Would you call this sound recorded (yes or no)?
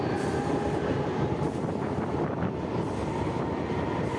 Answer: yes